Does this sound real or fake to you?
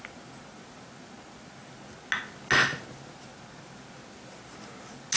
real